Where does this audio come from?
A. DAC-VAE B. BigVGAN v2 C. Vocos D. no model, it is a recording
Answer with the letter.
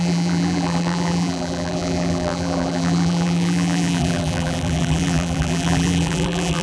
B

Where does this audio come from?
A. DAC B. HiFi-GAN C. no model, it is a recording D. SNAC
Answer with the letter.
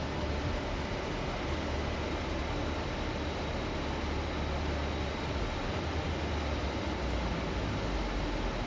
C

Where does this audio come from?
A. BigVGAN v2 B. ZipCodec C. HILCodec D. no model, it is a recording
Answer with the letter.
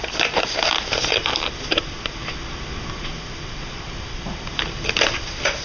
D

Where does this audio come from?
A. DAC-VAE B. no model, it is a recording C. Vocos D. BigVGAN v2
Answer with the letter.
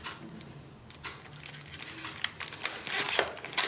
B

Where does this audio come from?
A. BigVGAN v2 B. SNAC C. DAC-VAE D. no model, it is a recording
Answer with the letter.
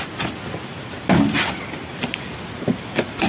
D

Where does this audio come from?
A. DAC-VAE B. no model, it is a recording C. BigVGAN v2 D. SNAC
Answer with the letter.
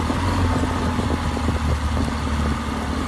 B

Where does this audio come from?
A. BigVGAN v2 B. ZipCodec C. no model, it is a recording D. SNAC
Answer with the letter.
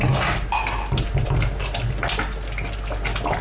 C